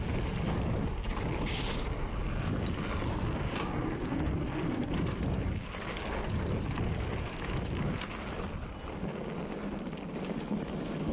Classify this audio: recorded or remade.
recorded